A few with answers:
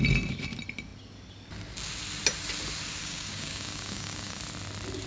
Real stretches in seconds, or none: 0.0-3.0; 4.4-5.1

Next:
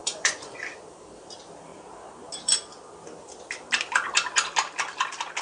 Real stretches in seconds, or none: 0.6-5.4

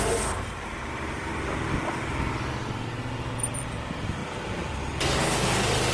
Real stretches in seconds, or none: 0.0-5.9

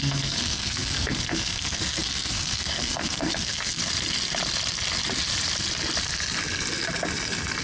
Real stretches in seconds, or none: 3.8-7.6